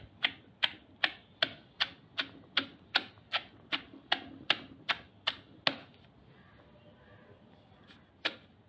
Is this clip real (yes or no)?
yes